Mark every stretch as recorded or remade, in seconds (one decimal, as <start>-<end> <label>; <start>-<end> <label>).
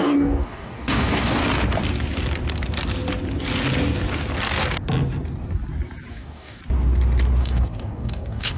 0.0-1.4 remade; 1.4-6.1 recorded; 6.1-6.6 remade; 6.6-7.4 recorded; 7.4-8.6 remade